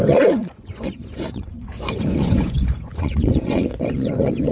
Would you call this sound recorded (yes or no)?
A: no